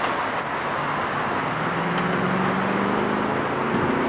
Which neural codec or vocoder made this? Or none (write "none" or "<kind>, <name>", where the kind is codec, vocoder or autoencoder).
none